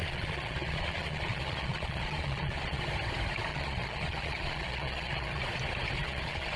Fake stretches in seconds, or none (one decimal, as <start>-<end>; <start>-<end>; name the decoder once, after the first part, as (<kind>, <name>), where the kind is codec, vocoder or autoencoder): 0.0-2.8 (vocoder, Vocos); 3.5-5.4; 6.0-6.6